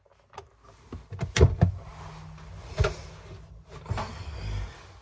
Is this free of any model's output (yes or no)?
yes